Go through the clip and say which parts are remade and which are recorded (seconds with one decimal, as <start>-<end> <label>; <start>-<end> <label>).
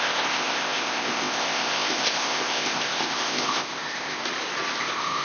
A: 0.0-4.2 remade; 4.2-4.8 recorded; 4.8-5.2 remade